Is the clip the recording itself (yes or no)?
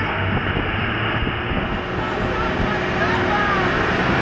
yes